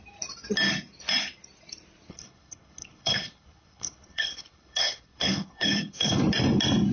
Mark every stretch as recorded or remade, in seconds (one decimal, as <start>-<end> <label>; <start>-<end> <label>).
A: 0.0-2.1 recorded; 2.1-6.2 remade; 6.2-6.9 recorded